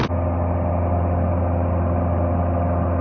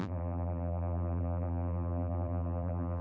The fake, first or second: second